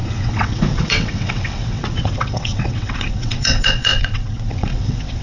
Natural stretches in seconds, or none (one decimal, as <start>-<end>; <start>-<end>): none